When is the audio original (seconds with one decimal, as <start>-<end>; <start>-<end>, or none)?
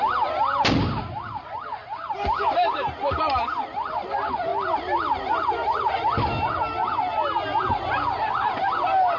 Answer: 0.0-9.2